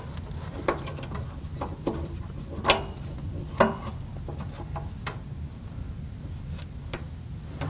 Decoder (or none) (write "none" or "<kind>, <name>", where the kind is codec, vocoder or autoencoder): none